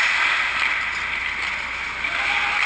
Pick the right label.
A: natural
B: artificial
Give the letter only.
A